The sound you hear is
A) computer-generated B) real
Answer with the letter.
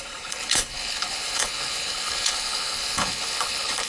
A